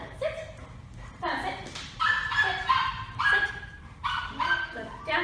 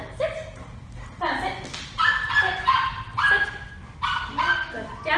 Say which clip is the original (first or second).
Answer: second